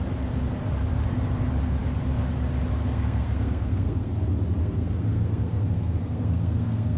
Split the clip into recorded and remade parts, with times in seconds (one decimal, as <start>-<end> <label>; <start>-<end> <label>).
0.0-2.8 recorded; 2.8-4.1 remade; 4.1-4.6 recorded; 4.6-7.0 remade